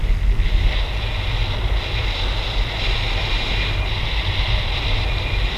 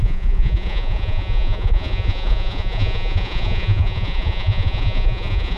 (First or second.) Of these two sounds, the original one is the first